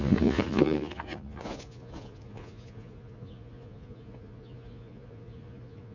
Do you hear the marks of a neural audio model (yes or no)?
yes